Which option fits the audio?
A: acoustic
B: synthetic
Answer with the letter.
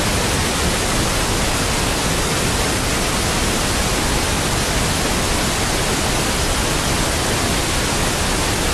A